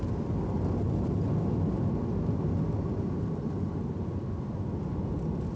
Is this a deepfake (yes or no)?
no